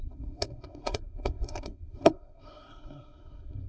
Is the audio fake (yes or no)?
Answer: yes